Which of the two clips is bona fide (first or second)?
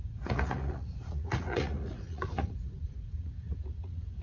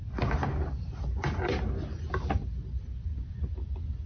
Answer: second